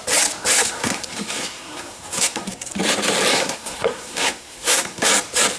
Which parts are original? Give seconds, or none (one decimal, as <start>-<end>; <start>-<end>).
0.0-0.6; 2.7-3.3; 5.1-5.6